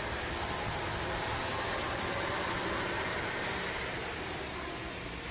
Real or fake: real